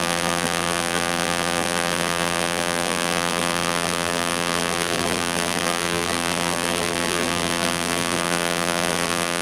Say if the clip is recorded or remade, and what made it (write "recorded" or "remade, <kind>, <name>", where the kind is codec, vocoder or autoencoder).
remade, vocoder, BigVGAN v2